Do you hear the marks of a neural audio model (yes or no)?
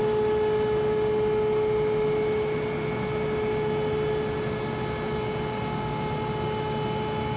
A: no